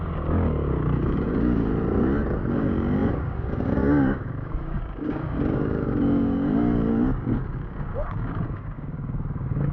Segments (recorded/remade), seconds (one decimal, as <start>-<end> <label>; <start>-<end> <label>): 0.0-1.7 remade; 1.7-2.5 recorded; 2.5-9.7 remade